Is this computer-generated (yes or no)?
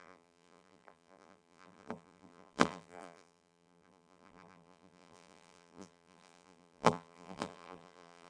yes